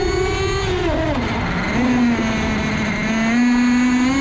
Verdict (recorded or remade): recorded